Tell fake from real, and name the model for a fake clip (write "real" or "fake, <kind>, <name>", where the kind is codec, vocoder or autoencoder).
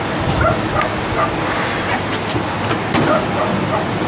real